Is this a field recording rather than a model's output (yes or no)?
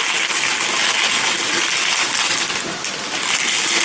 yes